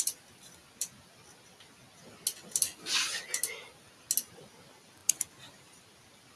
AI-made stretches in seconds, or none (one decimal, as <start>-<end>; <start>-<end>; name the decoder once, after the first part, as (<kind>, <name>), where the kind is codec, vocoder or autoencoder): 0.0-0.6 (vocoder, BigVGAN v2); 4.2-6.4